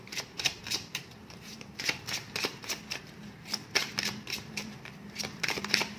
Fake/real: fake